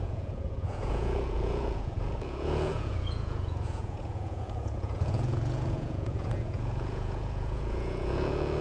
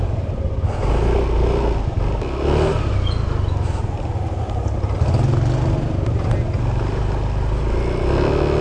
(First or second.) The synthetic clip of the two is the first